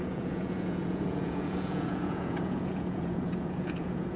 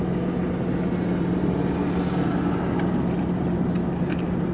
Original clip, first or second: second